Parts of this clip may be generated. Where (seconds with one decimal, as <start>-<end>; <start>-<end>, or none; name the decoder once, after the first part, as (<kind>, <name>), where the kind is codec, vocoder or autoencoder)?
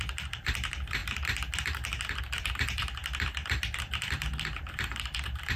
0.0-1.0 (vocoder, BigVGAN v2); 2.2-5.6